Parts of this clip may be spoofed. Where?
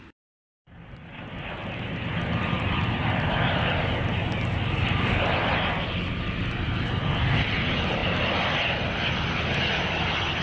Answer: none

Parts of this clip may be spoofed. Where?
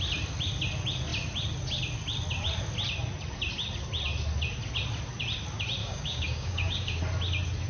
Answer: 5.8-7.0 (codec, DAC)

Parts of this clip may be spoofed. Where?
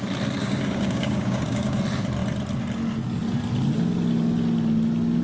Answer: 0.4-1.8 (codec, DAC)